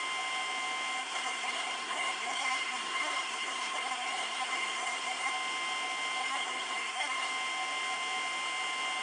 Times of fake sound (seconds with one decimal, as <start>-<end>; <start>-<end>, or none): 1.0-5.3; 6.2-7.3